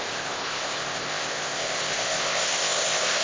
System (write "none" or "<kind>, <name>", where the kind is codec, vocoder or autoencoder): codec, ZipCodec